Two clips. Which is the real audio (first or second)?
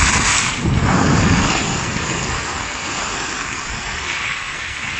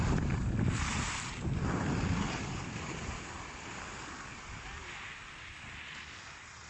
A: second